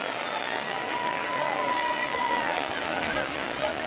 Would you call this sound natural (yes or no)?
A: no